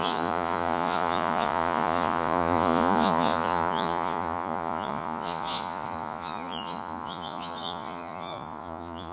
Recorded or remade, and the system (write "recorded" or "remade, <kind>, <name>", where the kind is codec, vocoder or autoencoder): remade, vocoder, Vocos